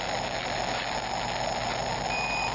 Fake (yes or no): no